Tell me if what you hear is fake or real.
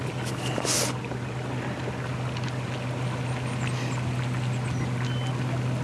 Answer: real